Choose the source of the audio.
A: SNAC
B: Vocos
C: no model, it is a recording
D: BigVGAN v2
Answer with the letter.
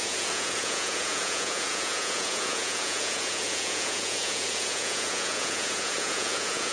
B